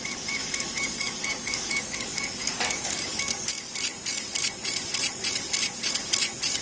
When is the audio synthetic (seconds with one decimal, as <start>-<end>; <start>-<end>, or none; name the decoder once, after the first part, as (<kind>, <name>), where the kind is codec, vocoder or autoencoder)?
0.4-3.5 (codec, DAC)